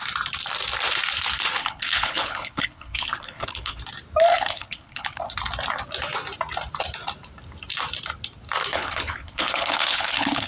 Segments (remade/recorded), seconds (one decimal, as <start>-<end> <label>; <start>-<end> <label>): 0.0-1.6 recorded; 1.6-3.8 remade; 3.8-4.3 recorded; 4.3-5.2 remade; 5.2-8.7 recorded; 8.7-10.5 remade